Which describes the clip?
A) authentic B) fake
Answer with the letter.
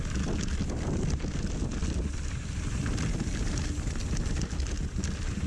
A